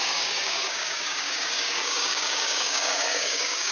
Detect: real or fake fake